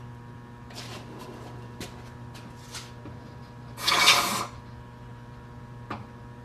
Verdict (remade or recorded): recorded